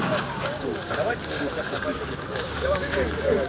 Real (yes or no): no